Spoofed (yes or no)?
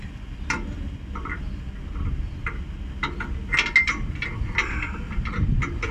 no